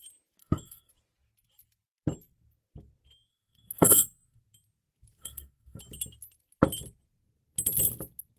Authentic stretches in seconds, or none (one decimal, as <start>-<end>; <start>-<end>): 0.0-0.4; 0.9-3.3; 4.4-5.2; 5.8-8.4